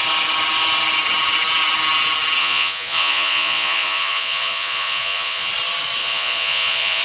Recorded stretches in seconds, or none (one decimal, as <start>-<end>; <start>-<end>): 0.0-2.4; 5.5-6.0